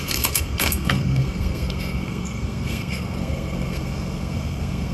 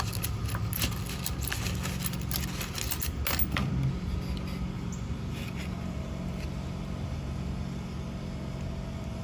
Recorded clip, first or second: second